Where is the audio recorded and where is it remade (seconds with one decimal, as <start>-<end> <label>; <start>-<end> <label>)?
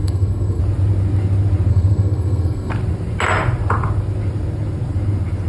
0.0-0.6 remade; 0.6-1.7 recorded; 1.7-2.7 remade; 2.7-5.5 recorded